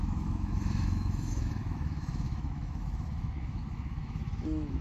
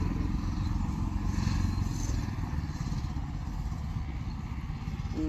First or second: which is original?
second